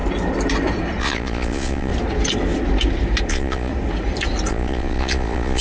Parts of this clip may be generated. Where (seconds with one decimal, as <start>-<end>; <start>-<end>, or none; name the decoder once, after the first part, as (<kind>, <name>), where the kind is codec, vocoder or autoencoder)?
1.0-1.9 (vocoder, Vocos); 3.3-3.7; 4.5-5.6